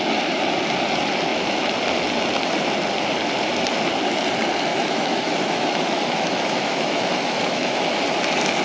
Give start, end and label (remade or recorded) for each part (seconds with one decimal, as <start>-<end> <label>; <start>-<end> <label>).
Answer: 0.0-4.7 recorded; 4.7-8.0 remade; 8.0-8.6 recorded